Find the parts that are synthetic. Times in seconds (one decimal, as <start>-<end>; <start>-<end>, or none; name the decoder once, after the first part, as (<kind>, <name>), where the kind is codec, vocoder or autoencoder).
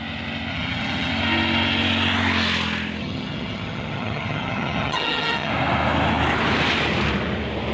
0.5-1.1 (vocoder, HiFi-GAN); 3.0-5.5